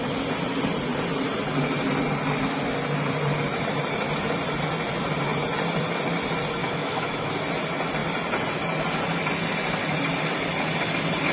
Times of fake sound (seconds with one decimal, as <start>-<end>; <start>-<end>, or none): 6.6-7.3